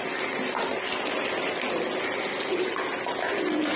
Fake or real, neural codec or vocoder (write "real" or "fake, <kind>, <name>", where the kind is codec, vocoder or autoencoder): real